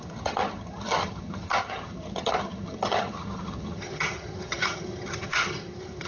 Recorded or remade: remade